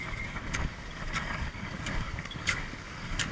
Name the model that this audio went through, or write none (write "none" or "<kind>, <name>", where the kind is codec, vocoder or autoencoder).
codec, DAC